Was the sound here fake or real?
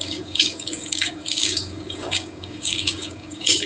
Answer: fake